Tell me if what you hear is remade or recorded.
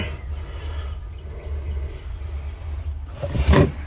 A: recorded